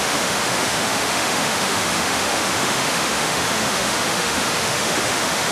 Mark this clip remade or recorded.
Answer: remade